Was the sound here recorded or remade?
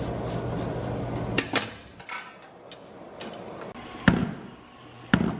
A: recorded